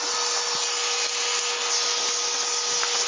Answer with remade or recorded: recorded